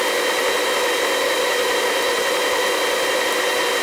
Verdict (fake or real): fake